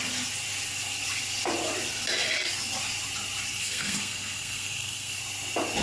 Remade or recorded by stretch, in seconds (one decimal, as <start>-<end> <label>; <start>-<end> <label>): 0.0-3.5 recorded; 3.5-5.2 remade; 5.2-5.8 recorded

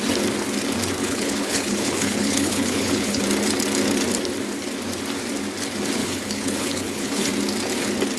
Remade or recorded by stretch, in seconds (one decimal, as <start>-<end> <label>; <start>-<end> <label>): 0.0-1.0 recorded; 1.0-3.2 remade; 3.2-6.0 recorded; 6.0-7.3 remade; 7.3-8.2 recorded

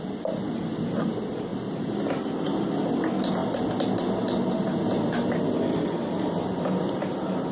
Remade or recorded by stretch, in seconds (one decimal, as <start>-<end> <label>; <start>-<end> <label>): 0.0-7.5 recorded

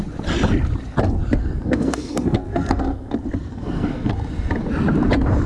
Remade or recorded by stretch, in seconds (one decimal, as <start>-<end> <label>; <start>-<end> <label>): 0.0-1.4 recorded; 1.4-3.1 remade; 3.1-3.5 recorded; 3.5-4.1 remade; 4.1-5.5 recorded

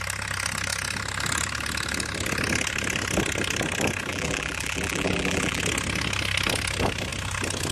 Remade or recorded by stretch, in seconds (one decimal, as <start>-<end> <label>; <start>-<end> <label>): 0.0-4.1 recorded; 4.1-5.6 remade; 5.6-7.7 recorded

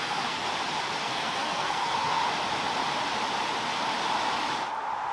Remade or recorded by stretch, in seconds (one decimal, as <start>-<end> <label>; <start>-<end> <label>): 0.0-0.4 remade; 0.4-1.0 recorded; 1.0-2.2 remade; 2.2-5.1 recorded

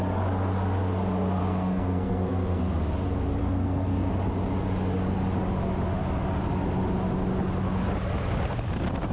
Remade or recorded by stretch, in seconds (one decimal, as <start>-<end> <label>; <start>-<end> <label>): 0.0-1.4 recorded; 1.4-2.7 remade; 2.7-3.4 recorded; 3.4-4.1 remade; 4.1-9.1 recorded

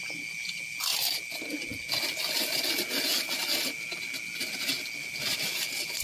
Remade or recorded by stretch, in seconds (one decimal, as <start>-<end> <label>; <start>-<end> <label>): 0.0-6.0 recorded